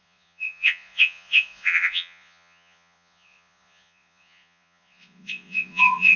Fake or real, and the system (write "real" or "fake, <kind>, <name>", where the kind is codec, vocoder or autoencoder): fake, vocoder, Vocos